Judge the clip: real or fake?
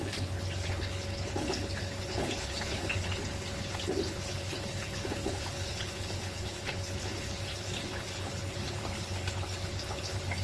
fake